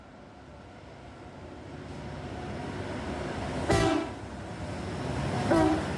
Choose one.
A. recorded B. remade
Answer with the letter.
A